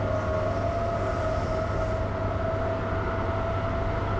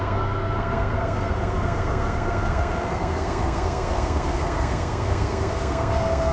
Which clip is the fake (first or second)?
second